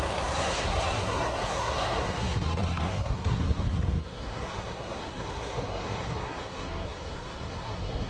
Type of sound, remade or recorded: remade